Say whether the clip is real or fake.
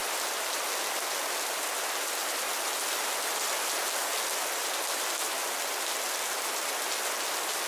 real